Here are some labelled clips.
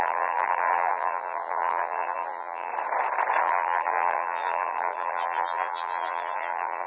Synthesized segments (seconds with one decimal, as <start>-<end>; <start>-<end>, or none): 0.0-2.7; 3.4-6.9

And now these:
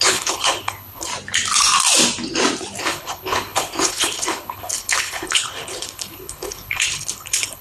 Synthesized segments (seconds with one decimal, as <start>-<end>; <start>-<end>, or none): 0.0-1.1; 2.8-7.6

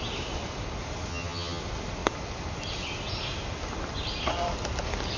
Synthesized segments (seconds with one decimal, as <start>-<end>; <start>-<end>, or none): 1.1-1.6

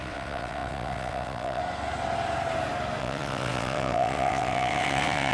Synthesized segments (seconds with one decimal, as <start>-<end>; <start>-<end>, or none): 0.0-1.6; 3.0-5.3